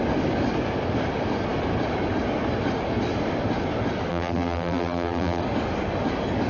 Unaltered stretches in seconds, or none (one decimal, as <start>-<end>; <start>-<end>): 0.0-4.1; 5.4-6.5

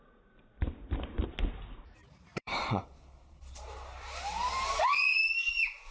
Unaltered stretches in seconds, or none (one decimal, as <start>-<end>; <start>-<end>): 0.0-2.0; 5.5-5.9

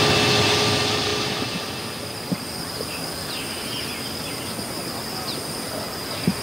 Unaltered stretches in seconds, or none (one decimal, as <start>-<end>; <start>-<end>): 0.0-6.4

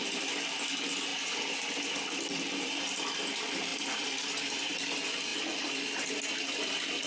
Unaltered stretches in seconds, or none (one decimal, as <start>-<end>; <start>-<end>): 0.0-3.7; 4.4-7.1

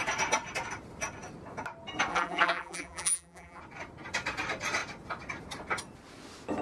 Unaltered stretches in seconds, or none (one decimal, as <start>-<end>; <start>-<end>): 0.0-2.1; 3.6-6.6

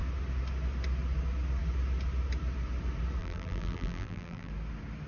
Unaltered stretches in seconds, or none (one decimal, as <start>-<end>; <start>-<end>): 0.0-3.2; 4.5-5.1

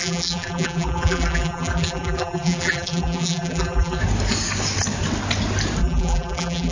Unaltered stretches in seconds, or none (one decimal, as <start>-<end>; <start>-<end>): 4.0-5.8